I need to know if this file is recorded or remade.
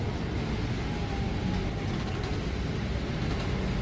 recorded